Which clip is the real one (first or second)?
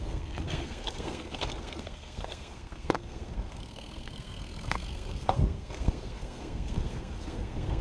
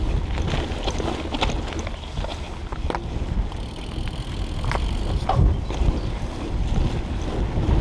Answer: second